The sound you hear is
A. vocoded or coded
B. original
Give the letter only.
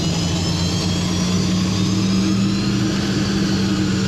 B